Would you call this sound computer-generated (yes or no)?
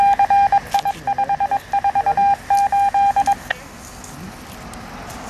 no